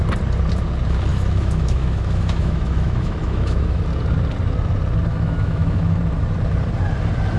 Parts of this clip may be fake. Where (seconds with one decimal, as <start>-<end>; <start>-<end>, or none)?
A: 1.1-3.8; 5.1-6.0